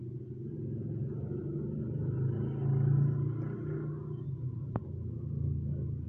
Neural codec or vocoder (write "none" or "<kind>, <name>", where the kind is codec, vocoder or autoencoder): none